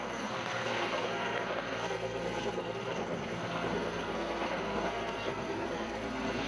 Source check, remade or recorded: remade